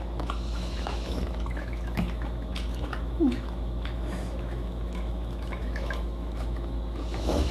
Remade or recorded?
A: remade